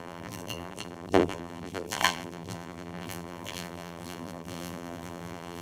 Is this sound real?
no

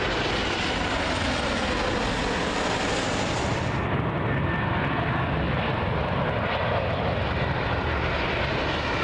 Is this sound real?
yes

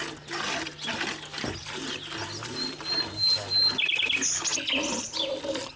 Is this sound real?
yes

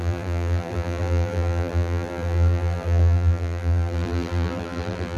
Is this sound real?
no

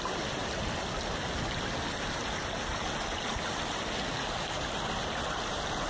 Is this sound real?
yes